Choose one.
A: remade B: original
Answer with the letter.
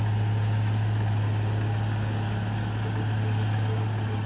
B